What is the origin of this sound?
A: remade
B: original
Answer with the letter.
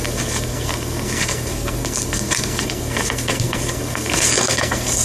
A